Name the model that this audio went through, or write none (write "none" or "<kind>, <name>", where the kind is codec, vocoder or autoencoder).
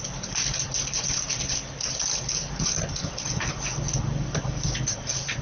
none